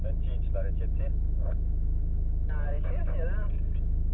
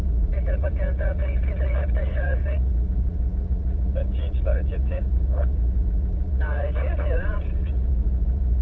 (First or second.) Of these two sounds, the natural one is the first